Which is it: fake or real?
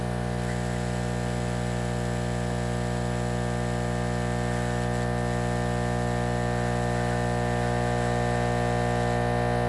real